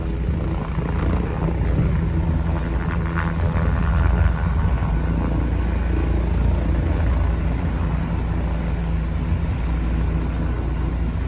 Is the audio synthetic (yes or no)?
no